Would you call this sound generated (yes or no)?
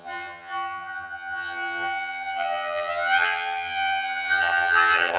yes